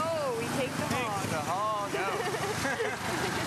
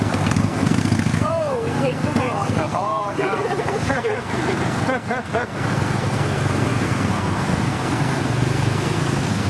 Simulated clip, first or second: second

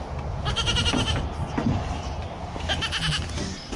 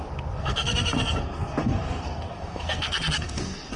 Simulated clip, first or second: second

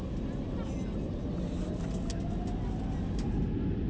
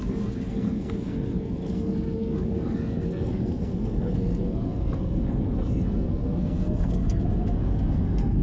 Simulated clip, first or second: second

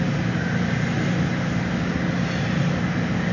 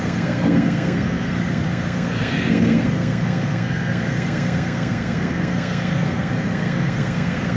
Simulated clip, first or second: second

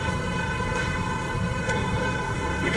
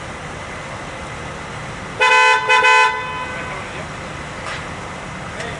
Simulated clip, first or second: first